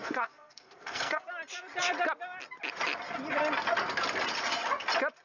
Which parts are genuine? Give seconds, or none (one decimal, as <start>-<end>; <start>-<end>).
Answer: 1.3-5.2